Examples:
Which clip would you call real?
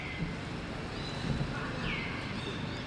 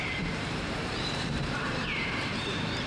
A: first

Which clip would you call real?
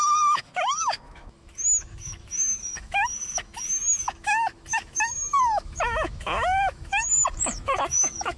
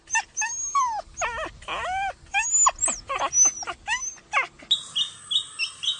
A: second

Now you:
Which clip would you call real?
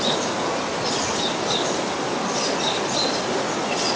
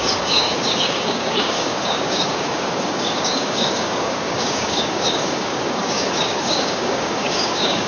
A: first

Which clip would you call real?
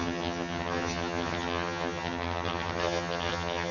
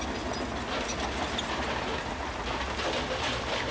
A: second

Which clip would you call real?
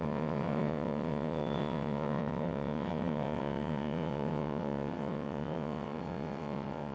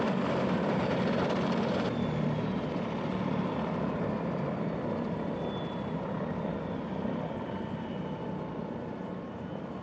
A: second